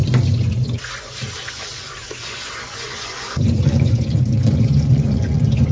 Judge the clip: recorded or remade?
remade